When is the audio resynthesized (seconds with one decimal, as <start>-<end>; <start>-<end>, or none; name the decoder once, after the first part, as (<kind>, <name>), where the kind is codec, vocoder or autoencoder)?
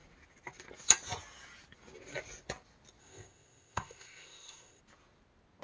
3.0-4.8 (codec, ZipCodec)